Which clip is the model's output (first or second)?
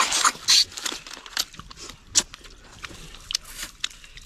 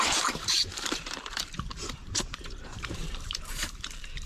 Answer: second